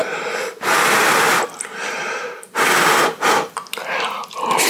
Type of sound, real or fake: real